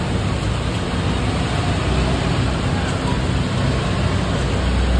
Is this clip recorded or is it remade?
recorded